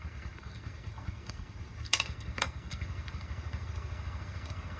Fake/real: fake